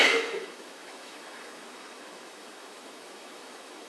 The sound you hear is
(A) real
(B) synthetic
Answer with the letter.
B